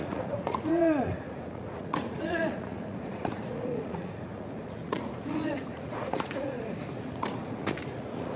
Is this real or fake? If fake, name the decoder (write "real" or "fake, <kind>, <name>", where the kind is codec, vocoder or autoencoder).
fake, vocoder, Vocos